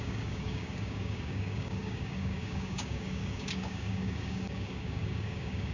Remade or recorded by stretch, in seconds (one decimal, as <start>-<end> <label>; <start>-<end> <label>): 0.0-5.7 remade